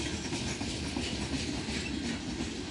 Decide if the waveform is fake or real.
real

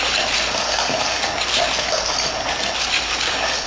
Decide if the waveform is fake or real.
real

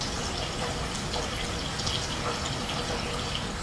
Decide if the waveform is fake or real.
real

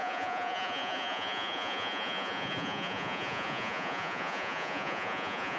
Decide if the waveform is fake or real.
fake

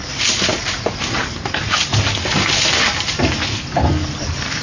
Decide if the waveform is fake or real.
real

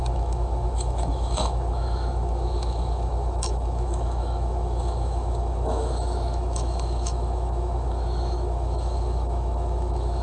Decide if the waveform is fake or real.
fake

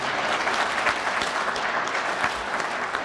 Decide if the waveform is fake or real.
real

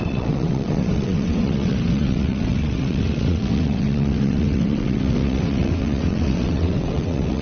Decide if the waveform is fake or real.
fake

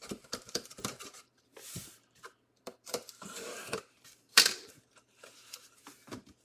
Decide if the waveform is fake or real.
fake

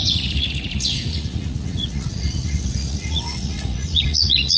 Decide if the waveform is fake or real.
fake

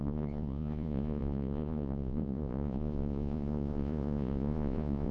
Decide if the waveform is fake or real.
fake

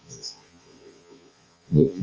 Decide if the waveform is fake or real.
fake